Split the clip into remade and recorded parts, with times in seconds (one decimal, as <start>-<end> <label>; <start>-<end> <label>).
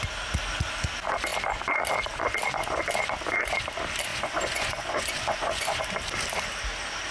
0.0-4.1 recorded; 4.1-5.8 remade; 5.8-7.1 recorded